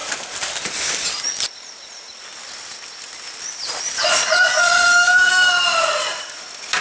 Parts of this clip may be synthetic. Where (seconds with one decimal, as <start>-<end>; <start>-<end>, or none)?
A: 4.5-5.5